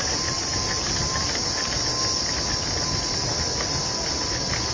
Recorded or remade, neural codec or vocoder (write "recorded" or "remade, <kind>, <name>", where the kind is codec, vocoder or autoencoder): recorded